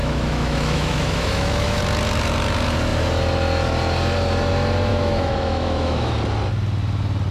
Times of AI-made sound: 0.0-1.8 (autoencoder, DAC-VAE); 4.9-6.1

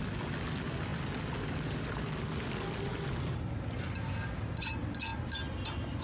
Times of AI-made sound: none

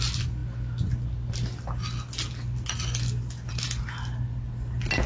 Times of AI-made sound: none